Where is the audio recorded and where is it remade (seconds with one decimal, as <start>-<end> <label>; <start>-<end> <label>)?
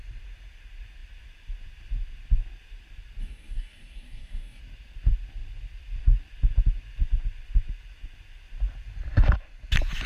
0.0-3.2 recorded; 3.2-4.6 remade; 4.6-10.1 recorded